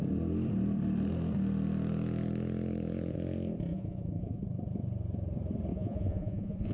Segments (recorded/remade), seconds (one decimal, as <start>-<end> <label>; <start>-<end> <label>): 0.0-3.7 recorded; 3.7-4.4 remade; 4.4-5.7 recorded; 5.7-6.7 remade